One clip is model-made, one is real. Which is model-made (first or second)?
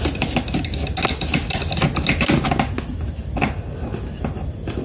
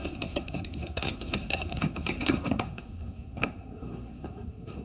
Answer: second